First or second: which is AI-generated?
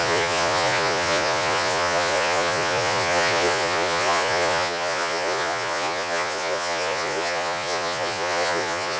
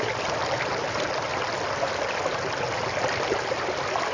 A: first